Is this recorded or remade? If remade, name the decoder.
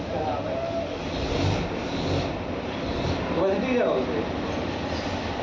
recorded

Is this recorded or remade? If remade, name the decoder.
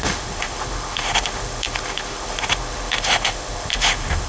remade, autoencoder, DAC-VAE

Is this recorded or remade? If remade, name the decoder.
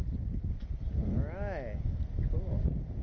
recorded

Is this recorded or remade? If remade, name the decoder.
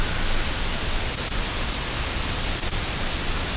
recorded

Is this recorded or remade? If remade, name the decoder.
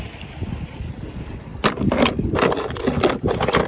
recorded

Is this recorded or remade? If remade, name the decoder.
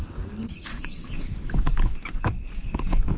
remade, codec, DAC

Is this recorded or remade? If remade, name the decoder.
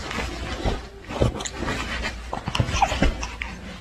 recorded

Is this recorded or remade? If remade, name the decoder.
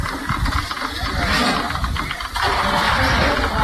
remade, vocoder, BigVGAN v2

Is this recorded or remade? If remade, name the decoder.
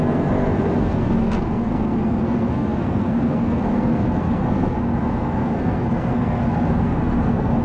remade, codec, SNAC